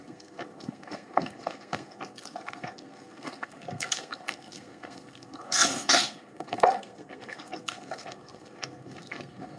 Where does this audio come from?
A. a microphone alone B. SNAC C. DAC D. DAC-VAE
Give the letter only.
B